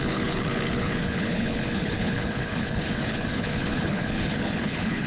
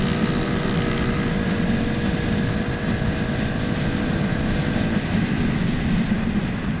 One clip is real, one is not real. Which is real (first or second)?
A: second